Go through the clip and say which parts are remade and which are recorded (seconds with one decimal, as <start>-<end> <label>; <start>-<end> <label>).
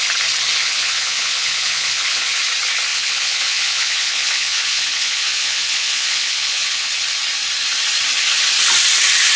0.0-0.6 recorded; 0.6-2.4 remade; 2.4-2.9 recorded; 2.9-6.9 remade; 6.9-9.4 recorded